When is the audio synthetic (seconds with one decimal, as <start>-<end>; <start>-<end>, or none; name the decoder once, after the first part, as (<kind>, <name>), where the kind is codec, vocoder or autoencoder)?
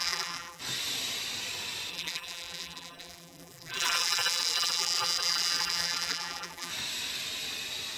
0.0-0.6 (vocoder, BigVGAN v2); 1.9-6.7